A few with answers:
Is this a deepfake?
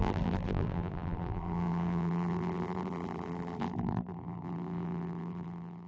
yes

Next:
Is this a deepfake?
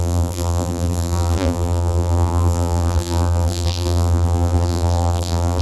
yes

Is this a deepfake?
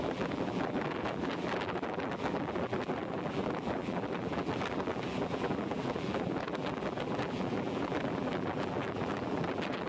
yes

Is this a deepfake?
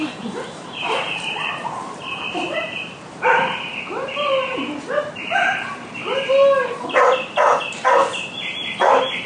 yes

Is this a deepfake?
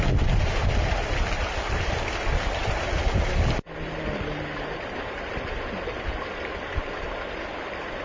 no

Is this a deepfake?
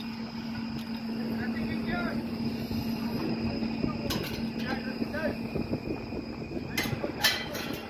no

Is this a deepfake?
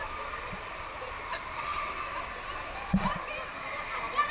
no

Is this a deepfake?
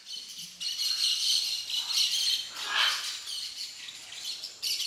no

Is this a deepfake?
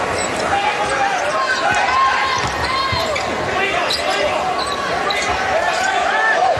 no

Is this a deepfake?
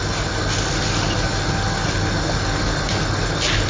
no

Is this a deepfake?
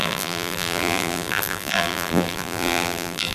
yes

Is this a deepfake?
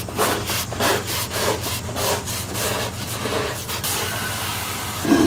yes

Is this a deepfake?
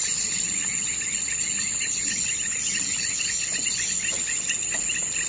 no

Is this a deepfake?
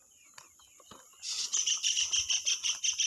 no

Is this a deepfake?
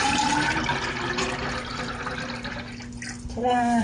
no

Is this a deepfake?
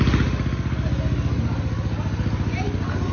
no